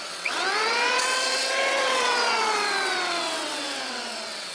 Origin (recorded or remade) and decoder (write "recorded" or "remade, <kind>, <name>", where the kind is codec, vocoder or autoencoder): remade, vocoder, WaveNeXt